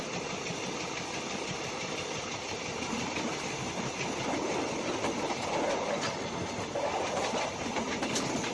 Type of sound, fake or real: real